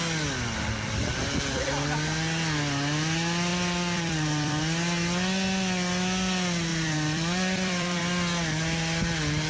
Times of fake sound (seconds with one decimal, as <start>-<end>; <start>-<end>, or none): 3.5-4.6; 6.7-8.0